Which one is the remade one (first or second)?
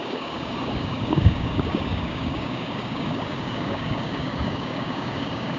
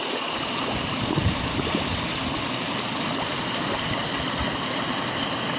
first